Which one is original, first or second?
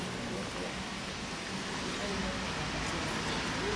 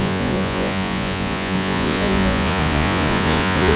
first